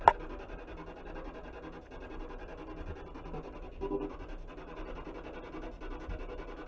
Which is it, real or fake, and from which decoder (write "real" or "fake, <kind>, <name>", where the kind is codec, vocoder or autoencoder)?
real